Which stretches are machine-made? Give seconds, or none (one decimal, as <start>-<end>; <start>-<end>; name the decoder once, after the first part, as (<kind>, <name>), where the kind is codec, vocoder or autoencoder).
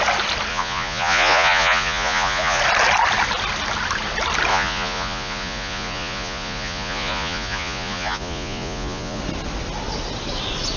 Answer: 0.5-2.6 (vocoder, Vocos); 4.5-9.2